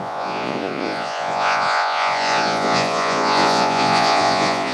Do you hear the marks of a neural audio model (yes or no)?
yes